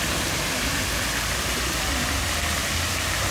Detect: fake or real real